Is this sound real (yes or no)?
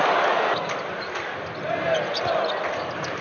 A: yes